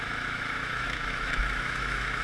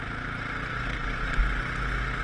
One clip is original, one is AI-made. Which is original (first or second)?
second